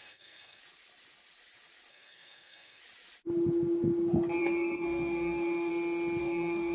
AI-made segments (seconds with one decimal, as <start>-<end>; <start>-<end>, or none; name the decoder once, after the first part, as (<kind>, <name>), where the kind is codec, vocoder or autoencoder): 0.0-0.6 (codec, SNAC); 1.9-2.8; 4.4-5.7; 6.2-6.7